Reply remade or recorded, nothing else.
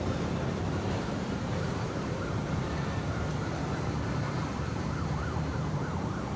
remade